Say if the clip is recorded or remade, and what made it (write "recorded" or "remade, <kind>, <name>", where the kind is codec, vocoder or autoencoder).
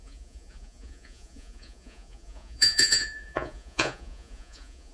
remade, vocoder, Vocos